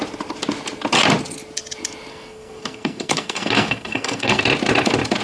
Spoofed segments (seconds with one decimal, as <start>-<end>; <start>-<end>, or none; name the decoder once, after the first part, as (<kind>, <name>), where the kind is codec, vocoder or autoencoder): 2.1-4.4 (codec, SNAC)